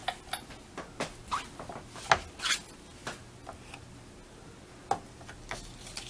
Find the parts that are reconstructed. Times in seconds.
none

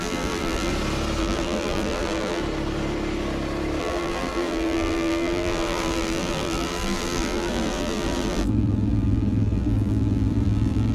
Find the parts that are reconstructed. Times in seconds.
0.0-0.7 (vocoder, BigVGAN v2); 1.2-2.4; 3.8-10.9

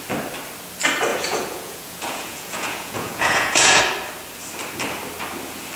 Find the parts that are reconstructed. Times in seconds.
1.1-3.8 (vocoder, Vocos)

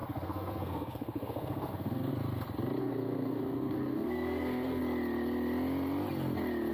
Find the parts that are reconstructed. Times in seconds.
0.0-2.1 (codec, SNAC); 2.8-4.8

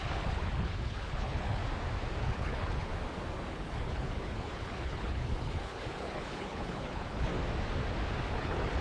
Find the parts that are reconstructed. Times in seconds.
0.0-1.6 (codec, HILCodec); 2.2-2.9; 3.5-7.3; 8.3-8.8

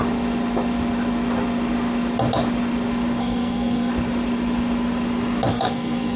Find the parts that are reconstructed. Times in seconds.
3.2-3.9 (codec, SNAC); 5.5-6.2

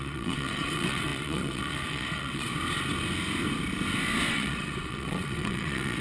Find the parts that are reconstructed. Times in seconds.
0.0-2.5 (vocoder, WaveNeXt); 4.3-6.0